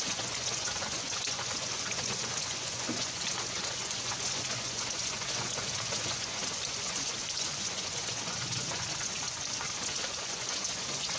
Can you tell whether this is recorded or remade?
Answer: remade